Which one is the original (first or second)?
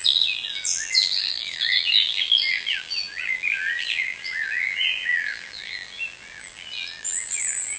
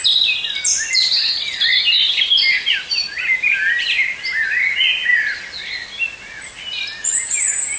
second